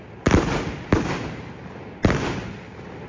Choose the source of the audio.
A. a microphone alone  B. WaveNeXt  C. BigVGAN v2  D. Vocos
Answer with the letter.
A